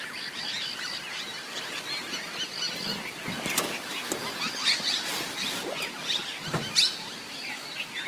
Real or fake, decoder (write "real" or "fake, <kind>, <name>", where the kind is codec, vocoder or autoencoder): real